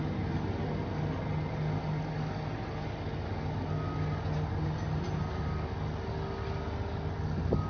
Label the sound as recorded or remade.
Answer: recorded